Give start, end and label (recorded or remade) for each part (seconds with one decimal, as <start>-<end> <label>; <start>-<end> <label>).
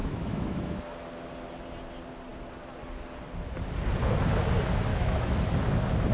0.0-0.8 remade; 0.8-4.9 recorded; 4.9-5.4 remade; 5.4-6.1 recorded